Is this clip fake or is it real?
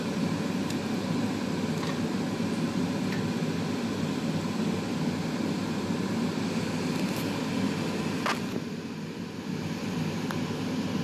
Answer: real